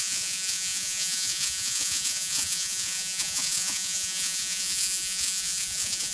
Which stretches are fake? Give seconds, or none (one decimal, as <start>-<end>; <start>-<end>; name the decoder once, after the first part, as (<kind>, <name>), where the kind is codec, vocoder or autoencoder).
0.0-6.1 (vocoder, Vocos)